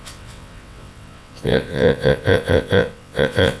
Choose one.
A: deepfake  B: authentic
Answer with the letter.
A